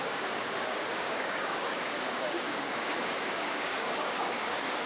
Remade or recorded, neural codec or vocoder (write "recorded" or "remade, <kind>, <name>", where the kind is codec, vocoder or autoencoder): remade, codec, DAC